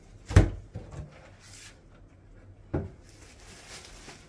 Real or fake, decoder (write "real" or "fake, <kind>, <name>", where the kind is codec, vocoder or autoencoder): real